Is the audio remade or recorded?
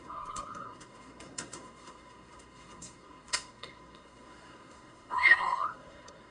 remade